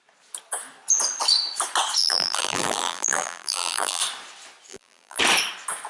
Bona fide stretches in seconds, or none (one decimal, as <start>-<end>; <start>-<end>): 0.0-2.0; 4.0-4.7; 5.2-5.9